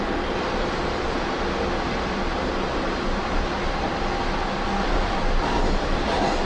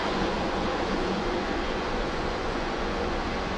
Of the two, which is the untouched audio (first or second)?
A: first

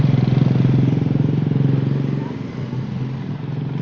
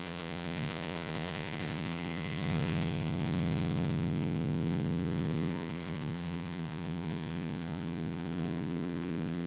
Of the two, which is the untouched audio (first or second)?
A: first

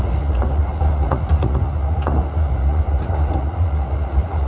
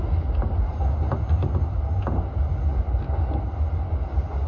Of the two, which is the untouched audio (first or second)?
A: second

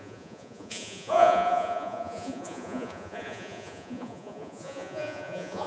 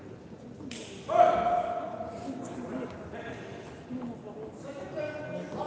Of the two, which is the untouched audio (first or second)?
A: second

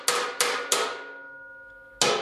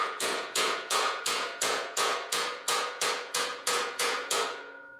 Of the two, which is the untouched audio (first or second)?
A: first